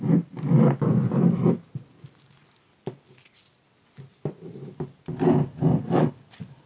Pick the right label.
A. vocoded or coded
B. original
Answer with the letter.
B